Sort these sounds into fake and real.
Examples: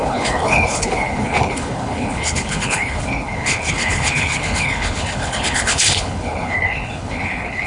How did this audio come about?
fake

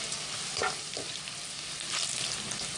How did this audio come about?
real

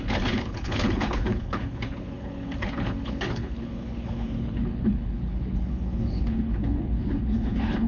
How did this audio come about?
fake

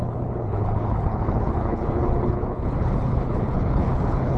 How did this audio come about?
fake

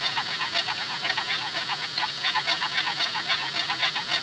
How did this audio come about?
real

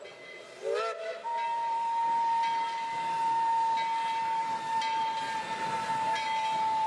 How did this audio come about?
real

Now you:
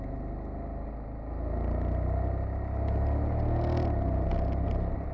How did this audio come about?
real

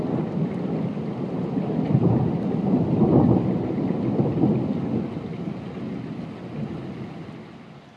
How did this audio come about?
real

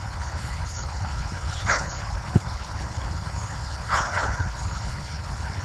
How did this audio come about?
fake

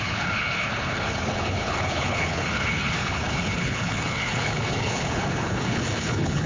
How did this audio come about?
fake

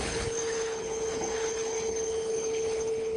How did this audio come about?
fake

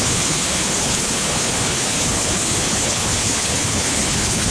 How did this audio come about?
fake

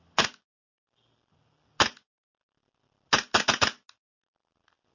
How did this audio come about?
real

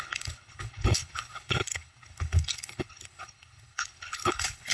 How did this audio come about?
fake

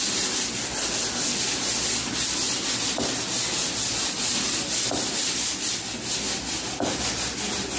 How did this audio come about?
real